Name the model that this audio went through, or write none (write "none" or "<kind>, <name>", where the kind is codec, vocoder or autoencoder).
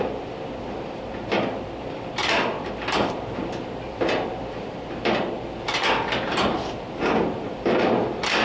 vocoder, BigVGAN v2